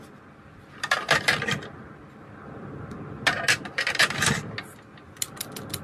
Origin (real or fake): real